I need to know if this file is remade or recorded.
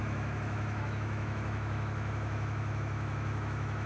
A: remade